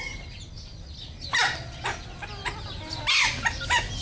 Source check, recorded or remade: recorded